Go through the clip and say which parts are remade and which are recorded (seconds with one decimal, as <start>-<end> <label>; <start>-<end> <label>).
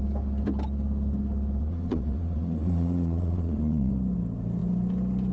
0.0-1.6 recorded; 1.6-3.9 remade; 3.9-5.3 recorded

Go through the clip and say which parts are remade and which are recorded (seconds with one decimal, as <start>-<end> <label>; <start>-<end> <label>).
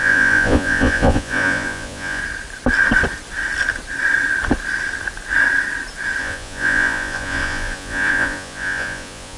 0.0-2.2 remade; 2.2-6.2 recorded; 6.2-9.4 remade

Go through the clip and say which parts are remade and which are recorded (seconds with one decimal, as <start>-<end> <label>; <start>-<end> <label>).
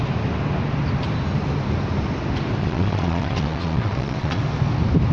0.0-2.6 recorded; 2.6-4.4 remade; 4.4-5.1 recorded